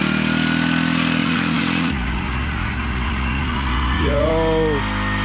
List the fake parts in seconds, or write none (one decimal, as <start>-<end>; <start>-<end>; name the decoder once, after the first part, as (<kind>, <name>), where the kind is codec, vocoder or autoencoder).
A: 1.2-4.3 (vocoder, Vocos)